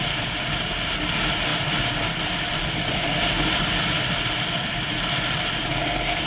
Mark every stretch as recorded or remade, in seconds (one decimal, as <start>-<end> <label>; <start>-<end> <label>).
0.0-1.5 recorded; 1.5-5.3 remade; 5.3-6.3 recorded